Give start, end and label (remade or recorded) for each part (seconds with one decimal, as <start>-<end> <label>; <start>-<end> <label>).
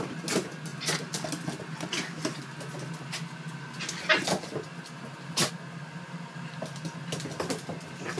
0.0-8.2 recorded